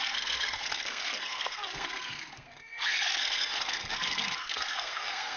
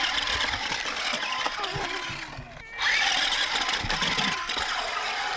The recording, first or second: second